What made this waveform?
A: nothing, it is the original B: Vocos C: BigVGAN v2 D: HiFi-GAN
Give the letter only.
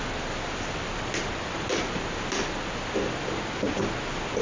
A